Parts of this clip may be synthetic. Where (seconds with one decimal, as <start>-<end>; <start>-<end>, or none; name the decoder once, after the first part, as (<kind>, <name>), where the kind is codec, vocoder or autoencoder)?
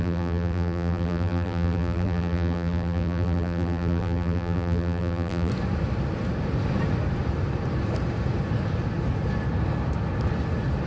0.0-5.5 (vocoder, BigVGAN v2)